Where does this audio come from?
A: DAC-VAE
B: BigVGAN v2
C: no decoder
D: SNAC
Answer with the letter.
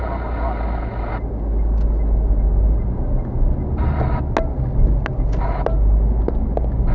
C